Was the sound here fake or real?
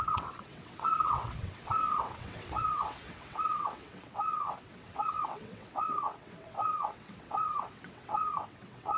fake